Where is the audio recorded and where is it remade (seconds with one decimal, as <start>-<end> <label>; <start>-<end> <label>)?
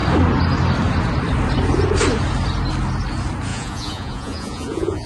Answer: 0.0-3.5 recorded; 3.5-5.1 remade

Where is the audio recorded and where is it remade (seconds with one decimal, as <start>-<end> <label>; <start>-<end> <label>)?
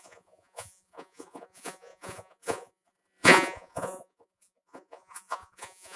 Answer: 0.0-6.0 remade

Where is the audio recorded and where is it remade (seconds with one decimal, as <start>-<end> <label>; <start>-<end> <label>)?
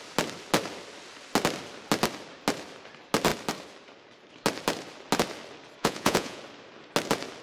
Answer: 0.0-5.8 recorded; 5.8-6.4 remade; 6.4-7.4 recorded